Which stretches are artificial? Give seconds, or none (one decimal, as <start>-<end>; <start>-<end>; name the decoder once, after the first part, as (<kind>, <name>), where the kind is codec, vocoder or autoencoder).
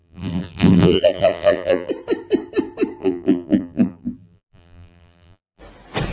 0.0-1.9 (vocoder, BigVGAN v2); 3.0-5.6